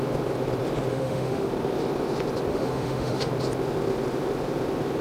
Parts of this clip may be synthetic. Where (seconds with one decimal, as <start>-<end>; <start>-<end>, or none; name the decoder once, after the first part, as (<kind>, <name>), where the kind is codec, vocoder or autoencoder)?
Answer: 0.9-1.5 (autoencoder, DAC-VAE); 2.5-3.3

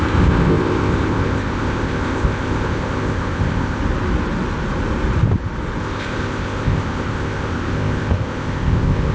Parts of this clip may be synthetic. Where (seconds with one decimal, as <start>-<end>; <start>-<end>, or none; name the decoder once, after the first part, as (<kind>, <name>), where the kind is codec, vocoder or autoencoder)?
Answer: 0.0-3.8 (codec, ZipCodec); 5.8-9.1

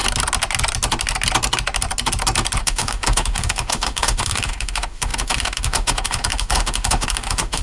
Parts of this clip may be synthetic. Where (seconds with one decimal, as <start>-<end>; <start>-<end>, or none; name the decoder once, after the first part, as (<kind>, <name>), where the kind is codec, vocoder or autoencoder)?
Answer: 2.6-7.6 (autoencoder, DAC-VAE)